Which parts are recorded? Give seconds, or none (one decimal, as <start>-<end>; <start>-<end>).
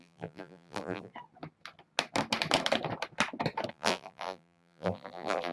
1.1-3.7